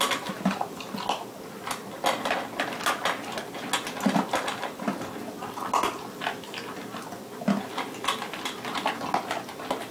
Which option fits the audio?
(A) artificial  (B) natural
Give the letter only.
B